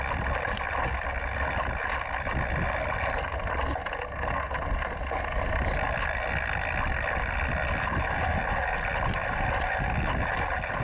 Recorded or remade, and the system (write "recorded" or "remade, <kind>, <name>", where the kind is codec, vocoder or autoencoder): recorded